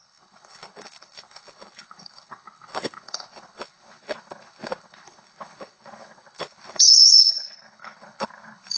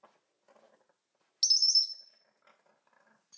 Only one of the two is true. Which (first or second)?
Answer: second